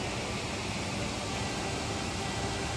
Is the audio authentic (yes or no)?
yes